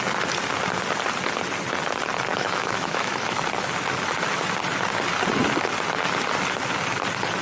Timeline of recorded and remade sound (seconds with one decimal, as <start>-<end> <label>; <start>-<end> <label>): 0.0-2.3 recorded; 2.3-3.4 remade; 3.4-7.4 recorded